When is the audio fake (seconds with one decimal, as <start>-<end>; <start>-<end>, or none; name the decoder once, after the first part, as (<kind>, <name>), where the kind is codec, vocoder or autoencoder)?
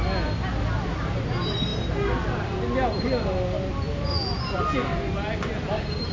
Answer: none